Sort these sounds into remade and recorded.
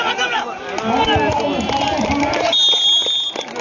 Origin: recorded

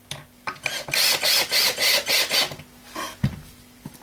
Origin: recorded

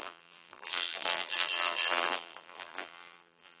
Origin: remade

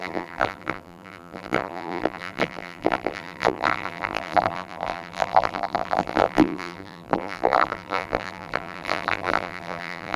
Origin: remade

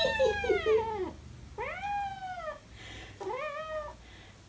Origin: recorded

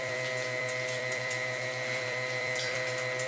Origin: remade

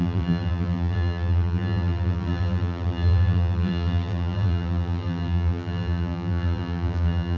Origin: remade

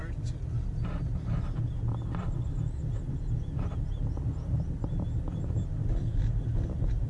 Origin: recorded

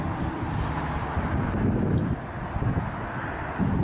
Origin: recorded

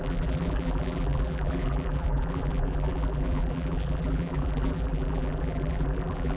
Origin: remade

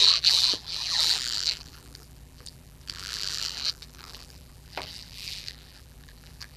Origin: remade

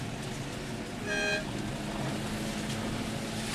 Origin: recorded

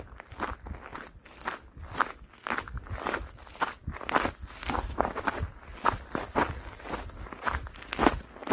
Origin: recorded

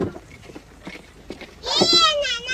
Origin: recorded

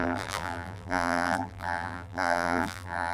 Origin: remade